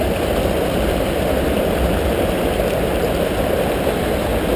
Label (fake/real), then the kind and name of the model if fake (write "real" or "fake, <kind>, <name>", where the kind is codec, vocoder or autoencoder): real